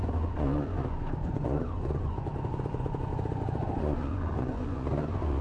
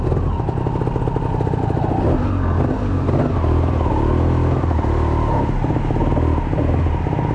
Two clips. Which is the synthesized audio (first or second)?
first